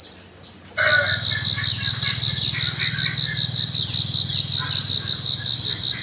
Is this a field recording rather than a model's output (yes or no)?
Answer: yes